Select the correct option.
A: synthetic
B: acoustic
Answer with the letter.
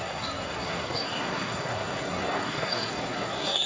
A